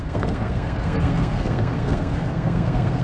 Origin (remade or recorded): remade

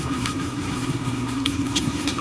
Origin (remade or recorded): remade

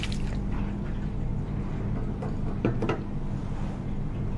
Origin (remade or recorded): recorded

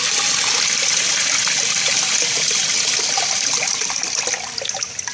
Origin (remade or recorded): recorded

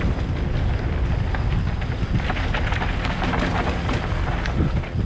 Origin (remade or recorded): recorded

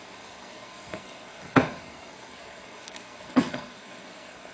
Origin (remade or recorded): remade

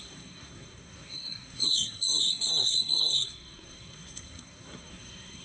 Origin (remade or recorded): remade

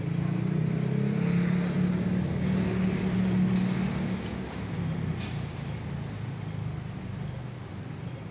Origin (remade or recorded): recorded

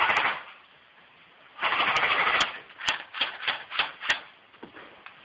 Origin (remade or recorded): recorded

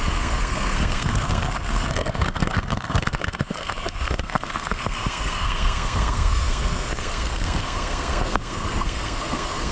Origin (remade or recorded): remade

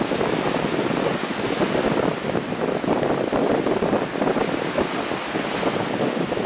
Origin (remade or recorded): recorded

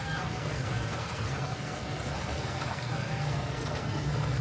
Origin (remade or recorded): remade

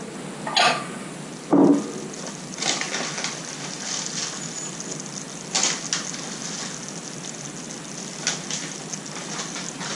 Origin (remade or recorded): recorded